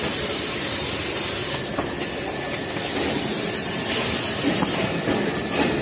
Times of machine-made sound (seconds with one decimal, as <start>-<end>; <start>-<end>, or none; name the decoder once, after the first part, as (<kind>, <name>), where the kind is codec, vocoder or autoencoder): none